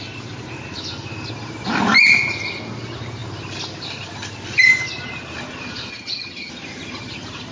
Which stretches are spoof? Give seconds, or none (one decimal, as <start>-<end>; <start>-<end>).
5.9-6.5